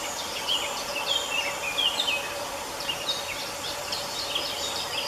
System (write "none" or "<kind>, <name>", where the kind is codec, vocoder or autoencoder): none